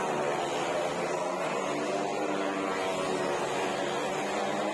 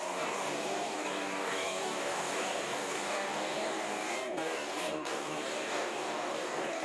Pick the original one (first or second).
first